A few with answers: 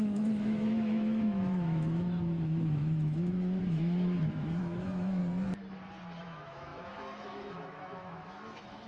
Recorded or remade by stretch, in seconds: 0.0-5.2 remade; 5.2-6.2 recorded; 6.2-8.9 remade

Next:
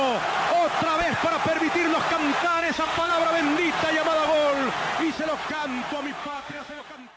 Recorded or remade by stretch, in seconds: 0.0-2.4 recorded; 2.4-3.1 remade; 3.1-6.2 recorded; 6.2-6.8 remade; 6.8-7.2 recorded

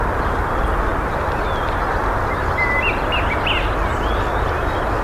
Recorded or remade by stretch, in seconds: 0.0-5.0 recorded